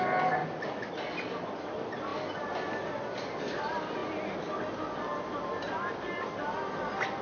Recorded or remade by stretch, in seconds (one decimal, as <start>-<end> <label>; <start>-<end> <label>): 0.0-7.2 recorded